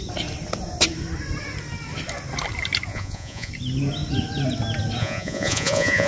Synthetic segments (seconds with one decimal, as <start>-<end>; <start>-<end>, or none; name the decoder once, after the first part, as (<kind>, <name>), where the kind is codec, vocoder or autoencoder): 2.9-3.5 (vocoder, Vocos); 5.0-6.1